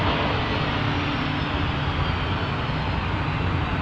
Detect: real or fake real